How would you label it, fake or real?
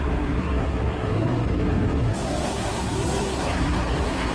fake